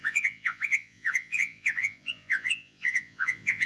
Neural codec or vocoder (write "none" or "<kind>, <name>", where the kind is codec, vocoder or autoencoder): vocoder, Vocos